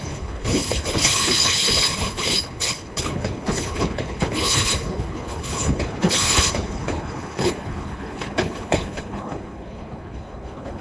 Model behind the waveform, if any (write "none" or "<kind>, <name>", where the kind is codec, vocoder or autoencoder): codec, HILCodec